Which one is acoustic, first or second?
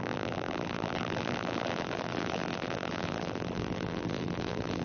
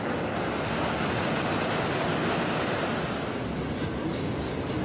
second